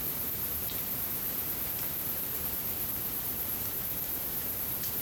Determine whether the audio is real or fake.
fake